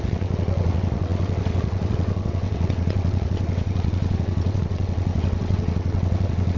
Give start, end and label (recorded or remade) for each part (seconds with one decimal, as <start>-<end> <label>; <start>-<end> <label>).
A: 0.0-6.6 remade